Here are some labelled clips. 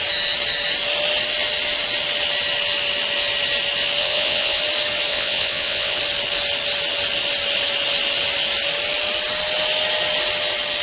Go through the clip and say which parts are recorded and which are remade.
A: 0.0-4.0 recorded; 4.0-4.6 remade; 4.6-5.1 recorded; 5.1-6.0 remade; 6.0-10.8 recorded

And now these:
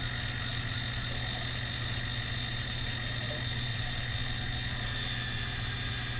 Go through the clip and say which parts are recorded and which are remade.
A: 0.0-2.5 recorded; 2.5-4.1 remade; 4.1-6.2 recorded